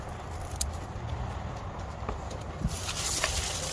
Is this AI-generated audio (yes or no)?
no